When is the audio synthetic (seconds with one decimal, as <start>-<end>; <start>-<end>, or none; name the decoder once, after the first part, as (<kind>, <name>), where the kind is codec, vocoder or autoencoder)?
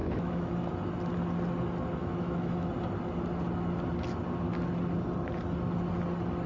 0.0-0.7 (autoencoder, DAC-VAE); 2.0-2.7